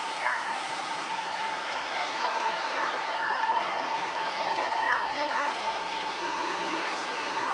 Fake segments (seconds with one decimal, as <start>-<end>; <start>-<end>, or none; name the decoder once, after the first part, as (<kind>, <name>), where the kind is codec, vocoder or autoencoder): 0.0-7.5 (codec, SNAC)